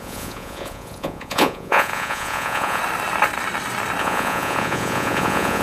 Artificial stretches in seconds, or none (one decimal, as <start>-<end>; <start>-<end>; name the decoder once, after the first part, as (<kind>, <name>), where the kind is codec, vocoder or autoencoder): 0.0-2.8 (vocoder, Vocos); 4.0-5.6